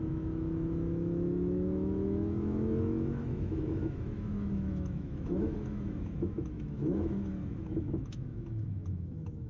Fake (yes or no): yes